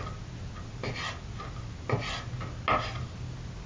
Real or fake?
real